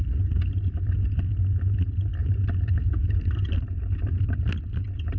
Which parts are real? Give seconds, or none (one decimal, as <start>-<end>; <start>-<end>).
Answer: 0.0-2.2; 4.4-5.2